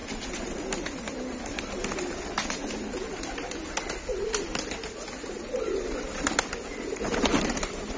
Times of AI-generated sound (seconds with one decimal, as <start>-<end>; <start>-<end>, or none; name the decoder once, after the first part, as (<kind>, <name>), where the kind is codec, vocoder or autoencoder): none